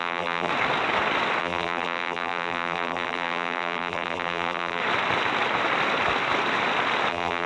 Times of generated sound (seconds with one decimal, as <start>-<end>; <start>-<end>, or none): 0.0-0.5; 1.4-4.8; 7.1-7.5